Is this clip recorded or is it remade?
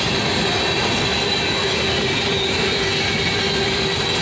recorded